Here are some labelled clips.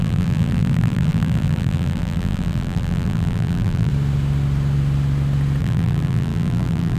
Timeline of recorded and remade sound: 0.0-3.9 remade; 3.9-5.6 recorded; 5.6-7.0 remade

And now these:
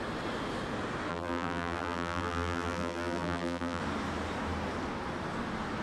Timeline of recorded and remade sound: 0.0-1.1 recorded; 1.1-3.8 remade; 3.8-5.8 recorded